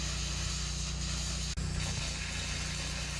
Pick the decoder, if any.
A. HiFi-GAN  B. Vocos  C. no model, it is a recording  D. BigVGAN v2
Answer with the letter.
C